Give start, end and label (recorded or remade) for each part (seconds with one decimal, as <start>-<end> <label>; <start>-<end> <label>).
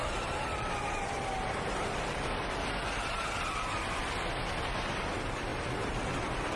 0.0-4.0 remade; 4.0-5.5 recorded; 5.5-6.0 remade; 6.0-6.6 recorded